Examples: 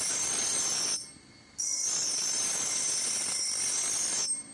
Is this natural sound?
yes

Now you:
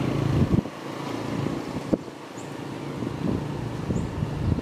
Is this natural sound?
yes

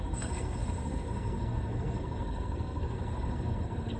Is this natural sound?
no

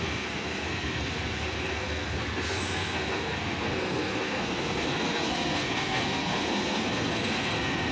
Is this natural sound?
no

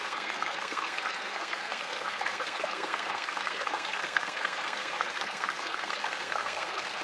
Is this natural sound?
no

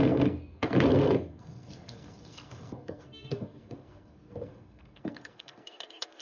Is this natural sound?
no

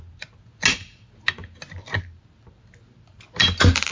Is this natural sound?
yes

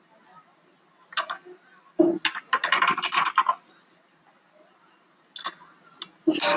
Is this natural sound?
yes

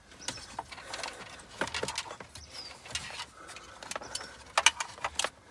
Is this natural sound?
yes